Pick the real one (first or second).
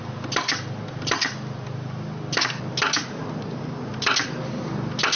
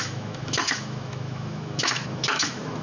first